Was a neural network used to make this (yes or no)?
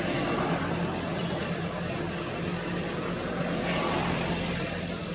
no